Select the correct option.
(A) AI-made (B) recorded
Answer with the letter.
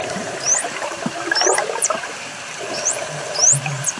A